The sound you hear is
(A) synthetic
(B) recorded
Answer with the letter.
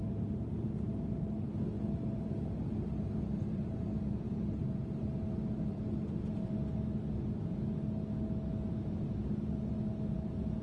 B